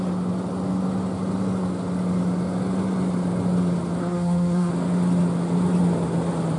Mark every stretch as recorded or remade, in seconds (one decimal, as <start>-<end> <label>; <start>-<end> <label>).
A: 0.0-4.0 recorded; 4.0-4.7 remade; 4.7-6.6 recorded